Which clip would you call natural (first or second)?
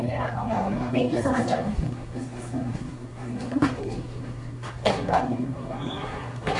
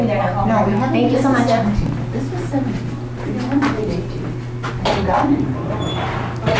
second